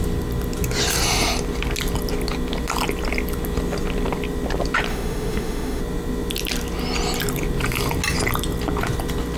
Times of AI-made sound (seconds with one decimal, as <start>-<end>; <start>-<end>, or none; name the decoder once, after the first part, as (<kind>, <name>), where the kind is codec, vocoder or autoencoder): 4.9-5.8 (autoencoder, DAC-VAE)

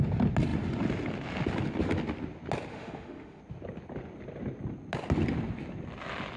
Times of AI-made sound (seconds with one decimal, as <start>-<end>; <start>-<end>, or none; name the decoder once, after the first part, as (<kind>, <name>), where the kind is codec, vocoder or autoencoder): 2.7-3.4 (autoencoder, DAC-VAE)